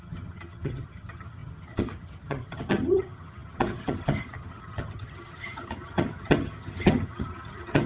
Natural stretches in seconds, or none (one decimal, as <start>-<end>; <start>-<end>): none